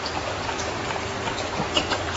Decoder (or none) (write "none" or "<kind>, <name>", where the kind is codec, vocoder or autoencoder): none